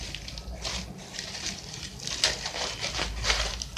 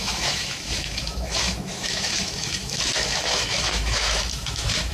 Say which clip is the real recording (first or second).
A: first